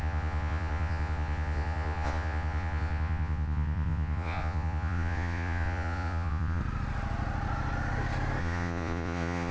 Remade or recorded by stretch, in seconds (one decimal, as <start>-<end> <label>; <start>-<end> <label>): 0.0-6.6 remade; 6.6-8.4 recorded; 8.4-9.5 remade